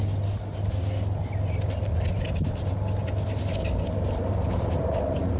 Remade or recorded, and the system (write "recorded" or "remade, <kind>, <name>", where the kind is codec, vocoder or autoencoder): recorded